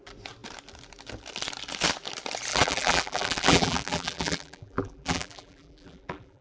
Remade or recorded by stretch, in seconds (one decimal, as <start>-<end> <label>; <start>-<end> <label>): 0.0-2.5 recorded; 2.5-6.4 remade

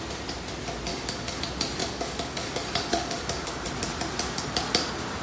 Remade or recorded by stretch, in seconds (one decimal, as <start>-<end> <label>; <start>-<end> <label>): 0.0-0.9 recorded; 0.9-1.4 remade; 1.4-1.8 recorded; 1.8-3.7 remade; 3.7-5.2 recorded

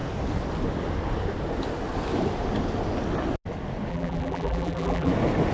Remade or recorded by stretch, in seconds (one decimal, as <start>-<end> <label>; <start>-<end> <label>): 0.0-3.9 recorded; 3.9-5.1 remade; 5.1-5.5 recorded

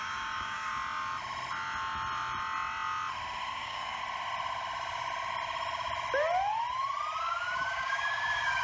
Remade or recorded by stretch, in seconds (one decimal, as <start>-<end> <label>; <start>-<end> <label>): 0.0-0.7 remade; 0.7-3.5 recorded; 3.5-4.0 remade; 4.0-7.2 recorded; 7.2-8.6 remade

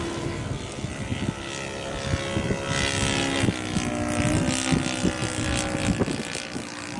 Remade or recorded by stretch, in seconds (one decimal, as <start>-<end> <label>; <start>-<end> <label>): 0.0-7.0 recorded